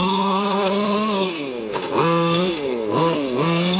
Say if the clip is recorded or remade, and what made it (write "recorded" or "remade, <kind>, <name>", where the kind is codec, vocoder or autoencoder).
remade, codec, SNAC